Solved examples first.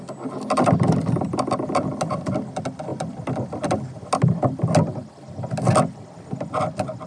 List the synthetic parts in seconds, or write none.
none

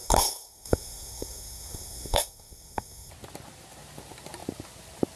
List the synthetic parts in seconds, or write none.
0.0-3.1 (codec, SNAC)

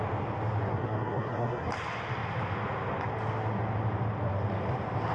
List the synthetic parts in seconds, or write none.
0.7-1.7 (codec, SNAC)